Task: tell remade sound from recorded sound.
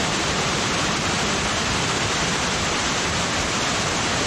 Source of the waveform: remade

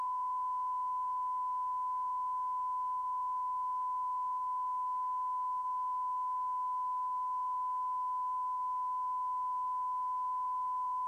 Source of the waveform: recorded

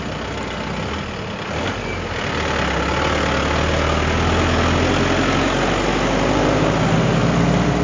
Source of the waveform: recorded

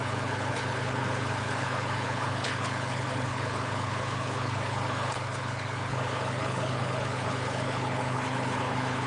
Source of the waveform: remade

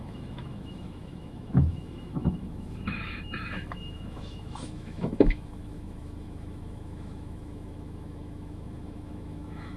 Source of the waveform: remade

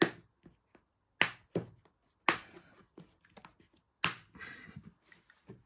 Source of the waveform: recorded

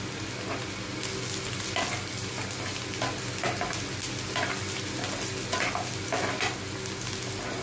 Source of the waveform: recorded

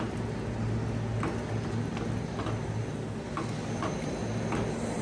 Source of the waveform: recorded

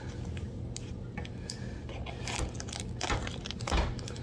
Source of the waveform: recorded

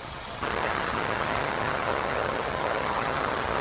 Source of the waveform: remade